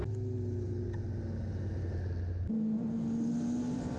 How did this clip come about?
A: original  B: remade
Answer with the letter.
A